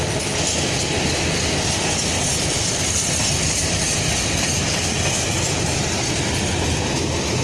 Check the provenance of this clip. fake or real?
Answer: real